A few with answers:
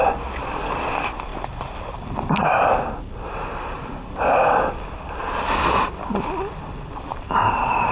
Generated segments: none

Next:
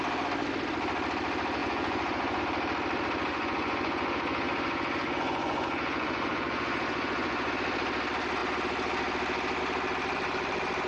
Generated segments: 1.6-2.4 (vocoder, Vocos); 3.3-7.5

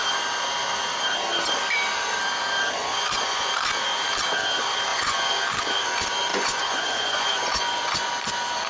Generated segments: 2.8-3.5 (vocoder, Vocos); 4.9-5.5; 6.3-8.1

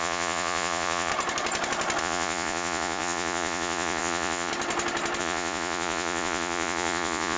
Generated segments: 0.0-1.1 (vocoder, Vocos); 2.0-4.5; 5.2-7.4

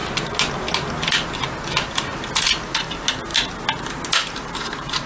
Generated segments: none

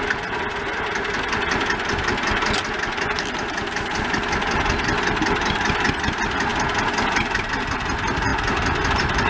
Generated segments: none